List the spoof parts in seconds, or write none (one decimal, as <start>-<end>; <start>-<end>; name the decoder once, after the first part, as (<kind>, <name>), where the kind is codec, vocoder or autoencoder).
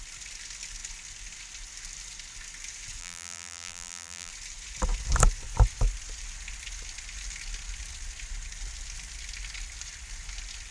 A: 3.0-4.3 (vocoder, BigVGAN v2)